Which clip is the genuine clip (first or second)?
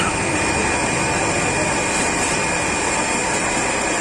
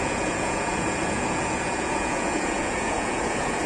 first